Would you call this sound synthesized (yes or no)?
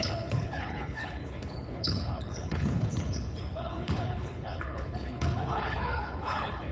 yes